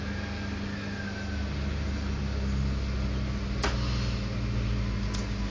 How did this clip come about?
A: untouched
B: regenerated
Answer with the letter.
A